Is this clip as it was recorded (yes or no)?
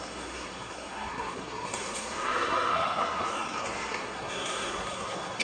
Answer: no